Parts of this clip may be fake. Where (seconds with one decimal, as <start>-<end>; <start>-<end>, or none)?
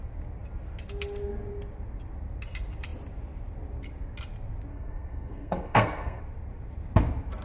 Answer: 4.7-6.2